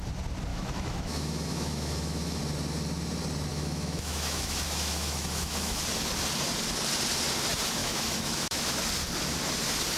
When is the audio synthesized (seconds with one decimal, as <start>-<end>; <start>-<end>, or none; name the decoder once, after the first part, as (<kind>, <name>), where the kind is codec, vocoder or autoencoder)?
0.5-2.4 (autoencoder, DAC-VAE); 3.5-5.8; 7.8-8.8